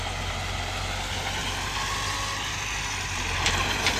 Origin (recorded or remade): recorded